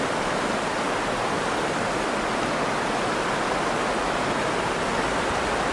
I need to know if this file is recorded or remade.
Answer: recorded